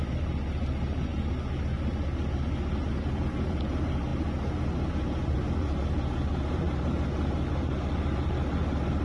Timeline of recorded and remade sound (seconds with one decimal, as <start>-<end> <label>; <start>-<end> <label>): 0.0-9.0 recorded